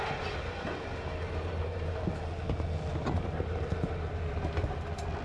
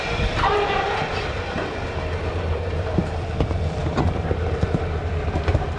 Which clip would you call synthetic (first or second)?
second